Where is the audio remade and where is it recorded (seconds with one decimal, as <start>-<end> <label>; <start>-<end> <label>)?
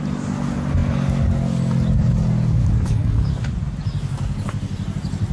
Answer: 0.0-2.6 recorded; 2.6-3.5 remade; 3.5-5.3 recorded